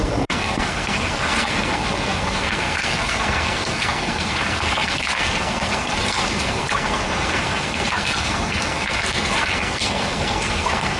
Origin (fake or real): fake